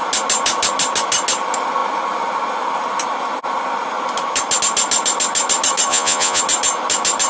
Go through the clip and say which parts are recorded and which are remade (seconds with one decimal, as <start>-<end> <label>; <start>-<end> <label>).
0.0-5.9 recorded; 5.9-6.4 remade; 6.4-7.3 recorded